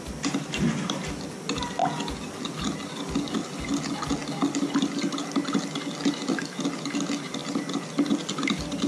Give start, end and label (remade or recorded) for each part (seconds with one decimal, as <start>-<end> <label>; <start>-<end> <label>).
0.0-7.4 recorded; 7.4-8.9 remade